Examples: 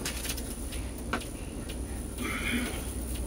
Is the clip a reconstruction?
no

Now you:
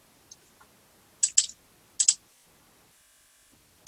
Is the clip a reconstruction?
no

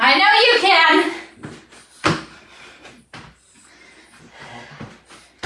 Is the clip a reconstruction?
no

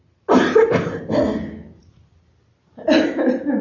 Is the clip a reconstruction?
no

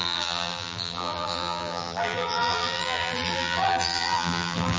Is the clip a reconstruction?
yes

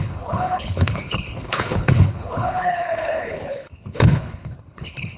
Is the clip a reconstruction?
yes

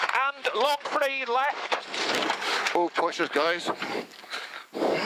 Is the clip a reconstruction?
yes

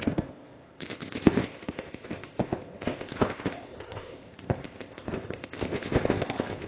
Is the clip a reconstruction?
yes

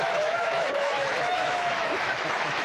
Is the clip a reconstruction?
yes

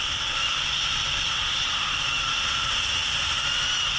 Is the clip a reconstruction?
no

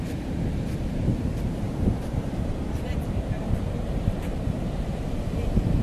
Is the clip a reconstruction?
yes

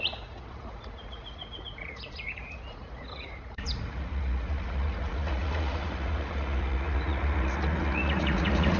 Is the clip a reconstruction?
yes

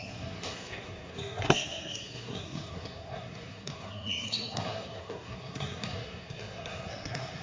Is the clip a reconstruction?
yes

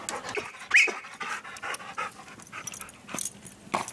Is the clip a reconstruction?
no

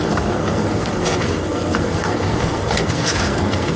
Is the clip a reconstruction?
yes